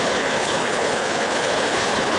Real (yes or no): no